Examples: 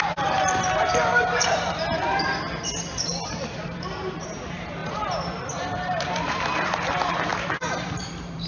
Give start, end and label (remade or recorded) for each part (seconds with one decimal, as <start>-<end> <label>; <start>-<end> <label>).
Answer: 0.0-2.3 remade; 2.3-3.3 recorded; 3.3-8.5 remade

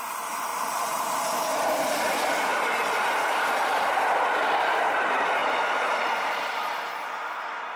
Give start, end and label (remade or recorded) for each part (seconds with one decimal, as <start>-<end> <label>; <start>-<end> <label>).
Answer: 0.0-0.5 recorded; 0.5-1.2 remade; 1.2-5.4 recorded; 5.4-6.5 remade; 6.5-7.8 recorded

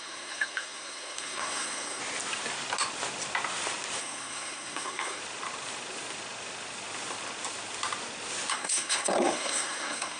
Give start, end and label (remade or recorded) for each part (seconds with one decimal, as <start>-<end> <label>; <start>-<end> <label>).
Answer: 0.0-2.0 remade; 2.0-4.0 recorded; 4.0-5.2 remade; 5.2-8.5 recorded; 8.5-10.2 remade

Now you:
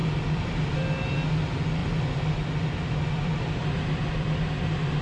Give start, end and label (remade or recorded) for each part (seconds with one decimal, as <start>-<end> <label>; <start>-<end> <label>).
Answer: 0.0-0.7 remade; 0.7-1.8 recorded; 1.8-5.0 remade

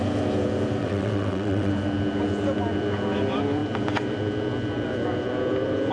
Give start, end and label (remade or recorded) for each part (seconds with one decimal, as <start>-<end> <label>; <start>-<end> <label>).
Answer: 0.0-0.8 recorded; 0.8-1.7 remade; 1.7-5.9 recorded